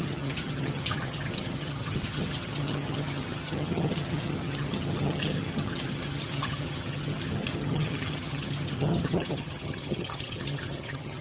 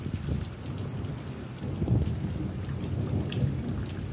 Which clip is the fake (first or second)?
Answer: first